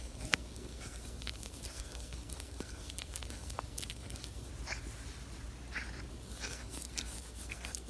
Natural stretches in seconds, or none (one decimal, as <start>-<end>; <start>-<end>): 4.5-6.1

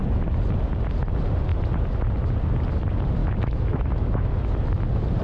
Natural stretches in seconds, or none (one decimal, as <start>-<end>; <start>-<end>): 0.0-3.2; 4.3-5.2

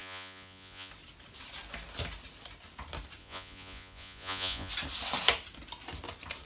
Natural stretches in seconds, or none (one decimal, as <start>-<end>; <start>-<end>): 0.9-3.2; 4.7-6.5

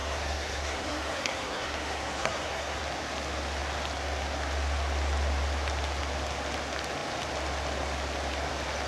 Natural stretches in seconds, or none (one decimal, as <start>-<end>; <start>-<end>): 2.8-8.9

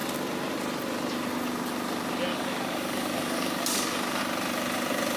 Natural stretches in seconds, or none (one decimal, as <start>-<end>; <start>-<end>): 0.0-2.3; 4.2-5.2

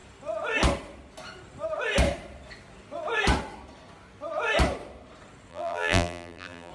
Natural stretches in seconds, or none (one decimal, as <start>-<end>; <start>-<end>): 0.0-5.5